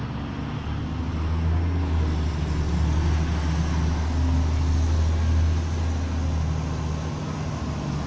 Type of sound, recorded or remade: recorded